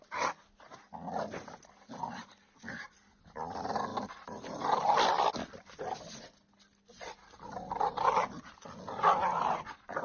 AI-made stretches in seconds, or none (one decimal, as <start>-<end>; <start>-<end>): none